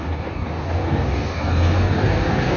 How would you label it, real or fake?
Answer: fake